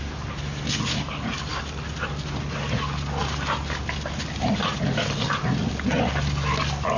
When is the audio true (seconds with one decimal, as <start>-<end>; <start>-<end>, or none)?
0.0-7.0